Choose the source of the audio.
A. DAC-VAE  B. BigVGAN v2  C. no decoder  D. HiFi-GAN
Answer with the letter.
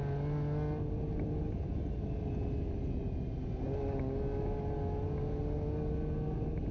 C